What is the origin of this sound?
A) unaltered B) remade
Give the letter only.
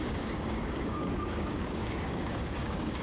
B